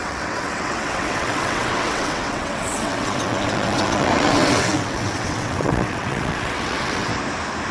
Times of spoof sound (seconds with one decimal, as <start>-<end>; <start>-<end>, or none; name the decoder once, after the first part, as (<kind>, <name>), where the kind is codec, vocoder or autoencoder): 0.0-7.1 (vocoder, WaveNeXt)